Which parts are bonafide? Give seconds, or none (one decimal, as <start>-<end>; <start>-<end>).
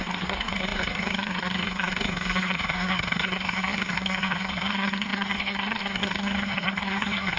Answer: none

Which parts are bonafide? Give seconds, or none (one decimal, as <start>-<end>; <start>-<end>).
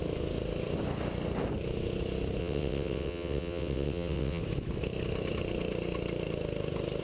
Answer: 0.0-2.4; 4.4-7.0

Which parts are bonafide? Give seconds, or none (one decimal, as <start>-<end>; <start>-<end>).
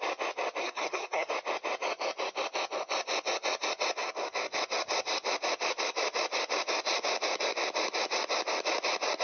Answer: 0.0-0.6; 1.3-9.2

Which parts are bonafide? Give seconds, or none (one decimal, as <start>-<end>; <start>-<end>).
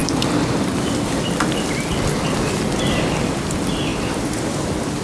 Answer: 0.0-5.0